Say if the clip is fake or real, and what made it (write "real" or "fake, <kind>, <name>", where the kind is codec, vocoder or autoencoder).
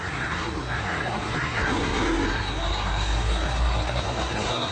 fake, codec, SNAC